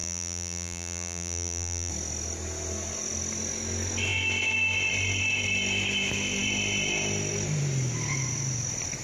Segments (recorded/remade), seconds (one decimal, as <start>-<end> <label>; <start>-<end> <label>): 0.0-1.9 remade; 1.9-9.0 recorded